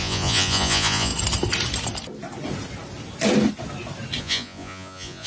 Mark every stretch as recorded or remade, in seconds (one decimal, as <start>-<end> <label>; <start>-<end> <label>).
0.0-1.1 remade; 1.1-4.2 recorded; 4.2-5.3 remade